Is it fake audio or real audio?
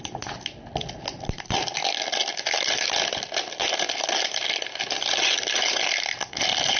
real